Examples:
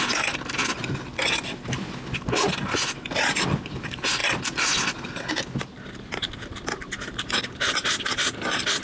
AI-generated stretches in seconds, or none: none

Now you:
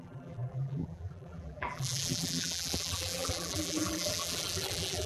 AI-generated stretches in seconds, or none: 0.0-5.1 (vocoder, BigVGAN v2)

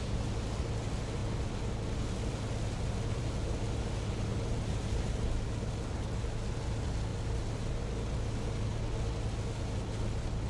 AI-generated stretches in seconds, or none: 7.1-7.8 (vocoder, BigVGAN v2)

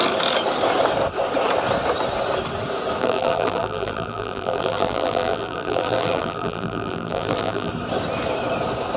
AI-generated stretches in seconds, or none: 3.0-7.7 (vocoder, BigVGAN v2)

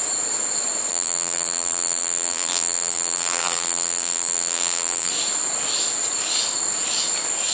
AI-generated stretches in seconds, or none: 0.9-5.1 (vocoder, BigVGAN v2)

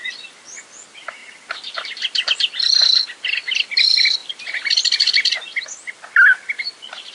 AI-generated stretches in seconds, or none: 0.0-7.1 (vocoder, BigVGAN v2)